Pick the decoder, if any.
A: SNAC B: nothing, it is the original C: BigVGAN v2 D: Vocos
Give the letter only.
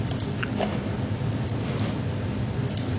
B